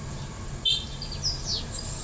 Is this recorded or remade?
recorded